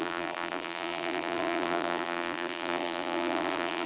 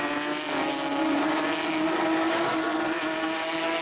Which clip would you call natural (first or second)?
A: second